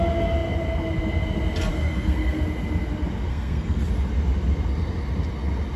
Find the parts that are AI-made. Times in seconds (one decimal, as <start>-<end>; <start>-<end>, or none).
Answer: 1.7-2.4; 3.3-3.9